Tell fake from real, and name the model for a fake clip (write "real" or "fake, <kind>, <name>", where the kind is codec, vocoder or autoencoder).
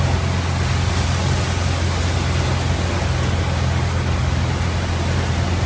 real